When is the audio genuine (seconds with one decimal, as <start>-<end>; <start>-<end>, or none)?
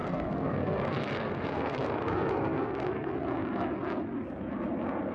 3.1-5.1